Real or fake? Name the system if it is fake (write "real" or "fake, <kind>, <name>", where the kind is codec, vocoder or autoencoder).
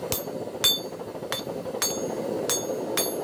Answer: real